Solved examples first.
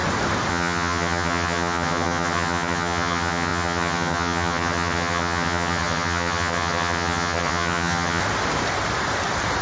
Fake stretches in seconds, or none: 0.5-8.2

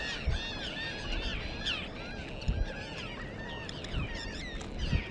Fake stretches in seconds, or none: none

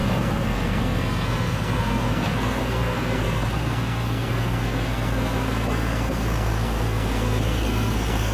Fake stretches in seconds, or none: 0.0-8.3

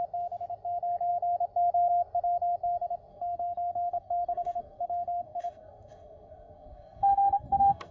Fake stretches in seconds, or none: 3.1-7.9

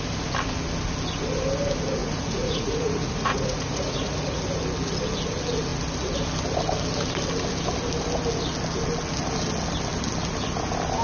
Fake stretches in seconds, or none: 2.0-4.4

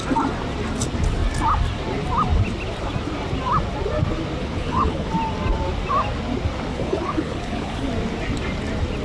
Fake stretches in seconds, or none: 4.4-5.1; 6.7-7.9